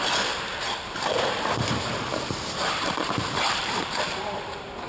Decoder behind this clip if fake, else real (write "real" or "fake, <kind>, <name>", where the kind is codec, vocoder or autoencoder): fake, vocoder, BigVGAN v2